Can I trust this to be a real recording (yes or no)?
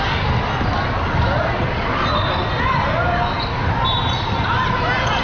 yes